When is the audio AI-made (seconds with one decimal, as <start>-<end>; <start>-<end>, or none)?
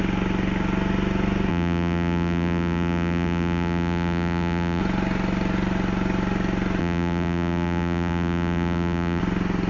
1.5-4.8; 6.8-9.2